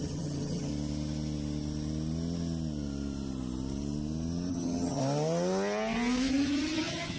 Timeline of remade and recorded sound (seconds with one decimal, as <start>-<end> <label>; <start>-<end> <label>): 0.0-0.7 remade; 0.7-4.5 recorded; 4.5-5.0 remade; 5.0-6.3 recorded; 6.3-7.2 remade